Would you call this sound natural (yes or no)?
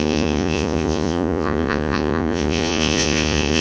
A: no